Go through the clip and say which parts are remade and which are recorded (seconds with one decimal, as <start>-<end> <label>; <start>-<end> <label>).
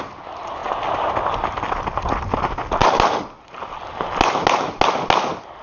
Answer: 0.0-5.6 recorded